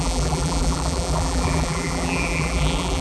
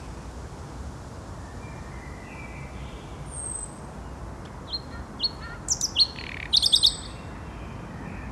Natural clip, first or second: second